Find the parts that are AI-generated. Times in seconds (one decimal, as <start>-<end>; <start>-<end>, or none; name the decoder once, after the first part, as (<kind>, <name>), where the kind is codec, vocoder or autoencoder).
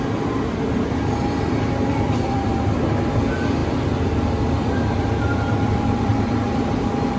0.0-6.1 (vocoder, BigVGAN v2)